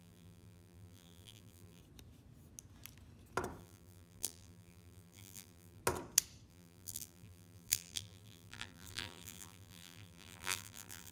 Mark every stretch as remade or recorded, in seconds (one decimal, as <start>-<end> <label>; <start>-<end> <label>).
0.0-1.8 remade; 1.8-3.6 recorded; 3.6-5.8 remade; 5.8-6.5 recorded; 6.5-11.1 remade